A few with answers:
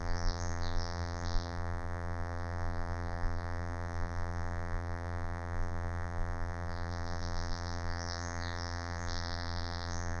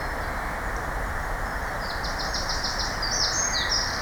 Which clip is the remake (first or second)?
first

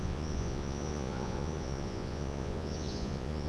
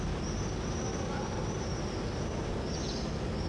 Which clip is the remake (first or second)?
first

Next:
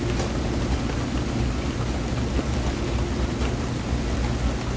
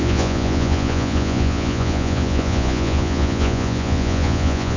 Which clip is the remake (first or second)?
second